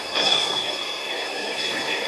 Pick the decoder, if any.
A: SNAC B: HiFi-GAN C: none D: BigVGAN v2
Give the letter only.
A